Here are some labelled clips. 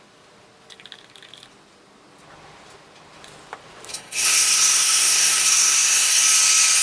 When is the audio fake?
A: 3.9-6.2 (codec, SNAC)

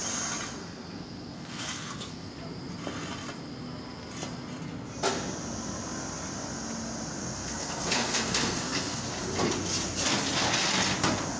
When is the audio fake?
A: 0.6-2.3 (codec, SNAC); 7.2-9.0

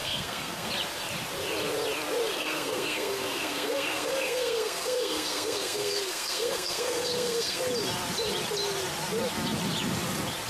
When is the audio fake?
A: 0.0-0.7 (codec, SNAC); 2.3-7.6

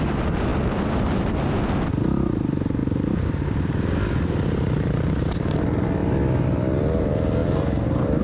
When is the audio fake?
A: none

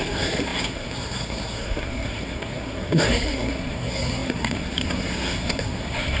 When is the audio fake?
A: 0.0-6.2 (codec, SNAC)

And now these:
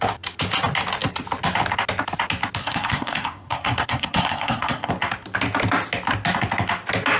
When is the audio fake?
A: 2.6-4.9 (codec, SNAC)